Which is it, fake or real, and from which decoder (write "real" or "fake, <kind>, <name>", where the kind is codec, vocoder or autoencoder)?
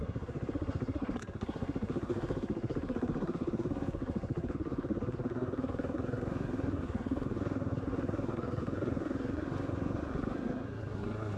fake, codec, SNAC